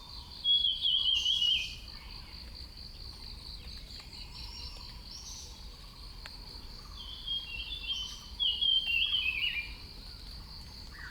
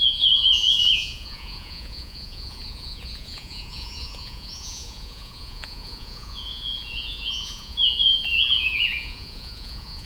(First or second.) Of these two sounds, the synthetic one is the second